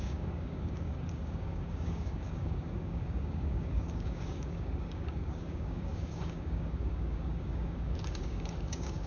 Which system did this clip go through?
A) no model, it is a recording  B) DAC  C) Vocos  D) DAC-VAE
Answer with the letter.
B